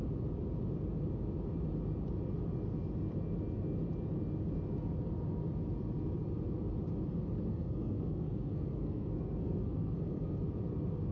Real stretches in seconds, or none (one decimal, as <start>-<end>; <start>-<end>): 0.0-7.5; 10.4-11.1